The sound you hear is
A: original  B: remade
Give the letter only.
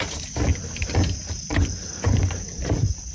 B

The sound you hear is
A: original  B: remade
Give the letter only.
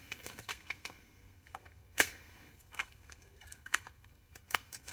B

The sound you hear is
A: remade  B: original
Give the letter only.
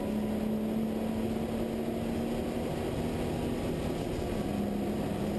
B